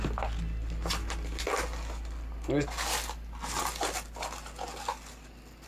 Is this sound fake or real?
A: real